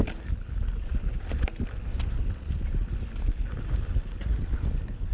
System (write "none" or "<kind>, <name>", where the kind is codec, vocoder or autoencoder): none